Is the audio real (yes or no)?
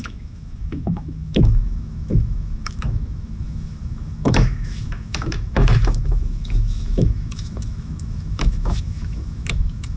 no